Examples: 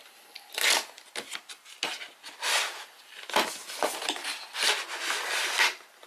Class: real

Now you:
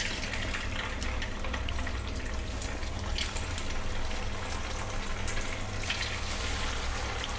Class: real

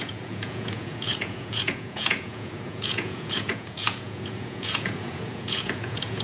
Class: fake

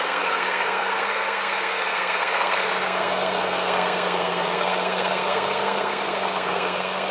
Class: fake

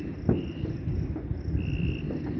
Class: real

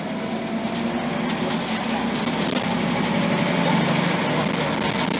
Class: real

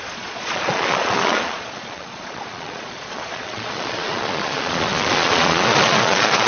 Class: fake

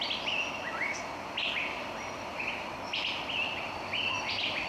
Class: real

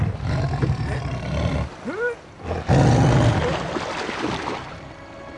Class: real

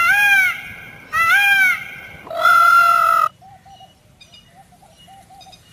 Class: fake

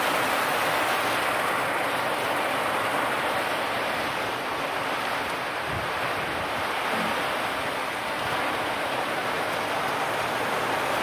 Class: real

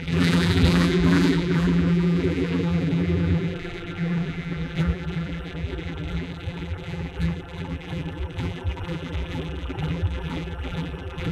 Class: fake